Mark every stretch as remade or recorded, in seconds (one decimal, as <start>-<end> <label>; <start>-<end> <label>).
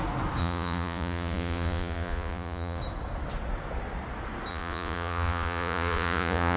0.0-0.4 recorded; 0.4-2.8 remade; 2.8-4.5 recorded; 4.5-6.6 remade